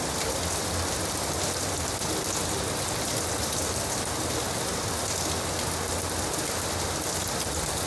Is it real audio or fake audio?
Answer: real